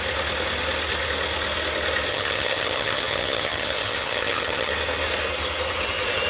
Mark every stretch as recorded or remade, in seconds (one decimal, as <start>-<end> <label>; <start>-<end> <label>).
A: 0.0-2.1 recorded; 2.1-4.7 remade; 4.7-6.3 recorded